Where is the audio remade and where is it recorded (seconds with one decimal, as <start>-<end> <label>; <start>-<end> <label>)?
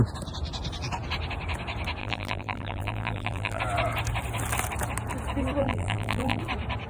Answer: 0.0-2.0 recorded; 2.0-3.6 remade; 3.6-5.6 recorded; 5.6-6.4 remade; 6.4-6.9 recorded